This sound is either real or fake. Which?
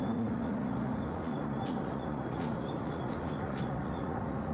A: fake